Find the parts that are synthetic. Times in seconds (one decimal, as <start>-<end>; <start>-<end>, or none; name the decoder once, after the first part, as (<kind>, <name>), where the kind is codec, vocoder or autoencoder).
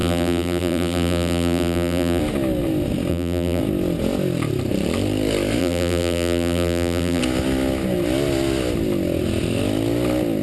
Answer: 0.0-2.2 (vocoder, BigVGAN v2); 3.1-3.6; 5.6-7.2